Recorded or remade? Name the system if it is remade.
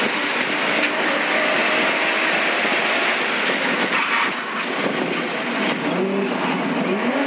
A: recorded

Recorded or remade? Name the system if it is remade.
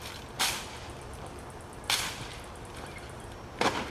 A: recorded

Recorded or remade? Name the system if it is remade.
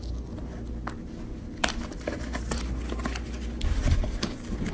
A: recorded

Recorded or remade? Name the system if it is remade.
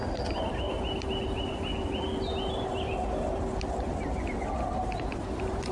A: recorded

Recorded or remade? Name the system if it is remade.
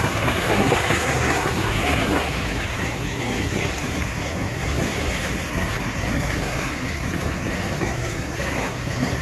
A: remade, codec, SNAC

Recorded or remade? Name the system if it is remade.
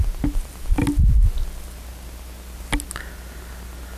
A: recorded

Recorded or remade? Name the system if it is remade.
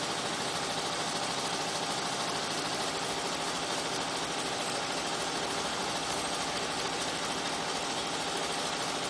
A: recorded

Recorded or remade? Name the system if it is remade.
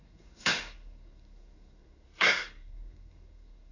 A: remade, codec, SNAC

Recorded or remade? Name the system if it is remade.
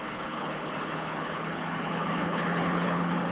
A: remade, codec, HILCodec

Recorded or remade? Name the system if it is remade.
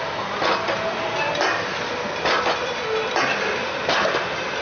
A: recorded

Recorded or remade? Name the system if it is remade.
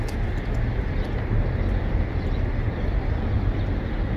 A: recorded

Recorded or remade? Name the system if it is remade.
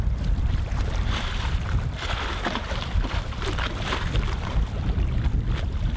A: remade, vocoder, BigVGAN v2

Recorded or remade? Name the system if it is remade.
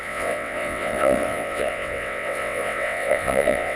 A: remade, vocoder, WaveNeXt